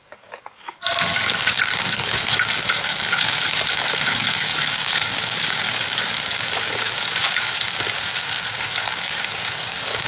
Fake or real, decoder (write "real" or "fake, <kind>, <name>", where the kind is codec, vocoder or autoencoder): fake, codec, DAC